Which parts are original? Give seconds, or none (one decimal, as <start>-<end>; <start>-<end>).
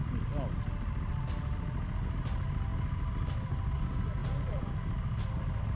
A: 0.0-5.8